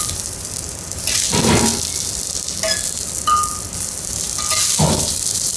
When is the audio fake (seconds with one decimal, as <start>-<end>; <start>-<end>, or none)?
0.0-1.7; 5.1-5.6